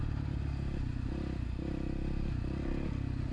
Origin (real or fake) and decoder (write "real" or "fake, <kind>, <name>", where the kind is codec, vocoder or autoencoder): real